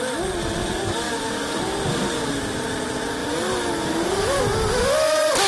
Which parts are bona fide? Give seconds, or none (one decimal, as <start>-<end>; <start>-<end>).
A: 0.0-0.6; 2.3-3.2; 4.4-5.5